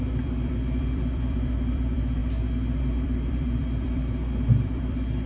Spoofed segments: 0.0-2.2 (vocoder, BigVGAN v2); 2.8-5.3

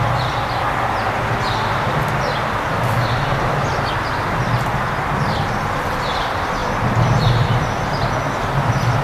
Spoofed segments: none

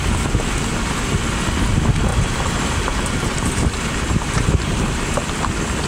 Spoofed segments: 2.1-4.8 (vocoder, BigVGAN v2)

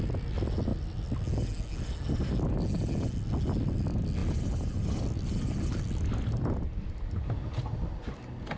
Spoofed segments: 4.2-5.8 (vocoder, BigVGAN v2); 6.7-7.4

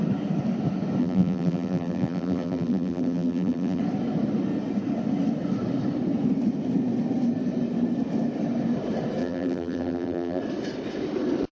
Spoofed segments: 1.0-3.8 (vocoder, BigVGAN v2); 9.2-10.4

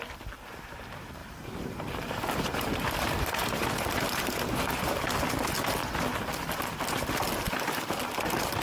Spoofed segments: 1.2-5.0 (vocoder, BigVGAN v2)

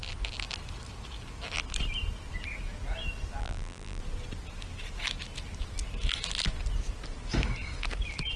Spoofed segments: 3.4-4.0 (vocoder, BigVGAN v2)

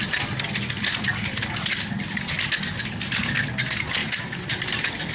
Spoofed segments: 4.0-5.1 (vocoder, BigVGAN v2)